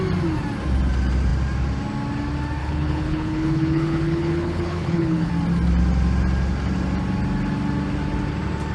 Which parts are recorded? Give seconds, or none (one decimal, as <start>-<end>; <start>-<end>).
0.0-2.6; 5.3-8.7